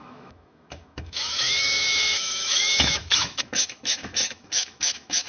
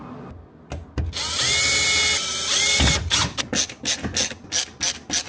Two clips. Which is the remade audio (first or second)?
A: first